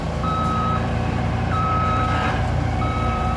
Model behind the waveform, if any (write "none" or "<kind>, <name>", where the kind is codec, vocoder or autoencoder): vocoder, BigVGAN v2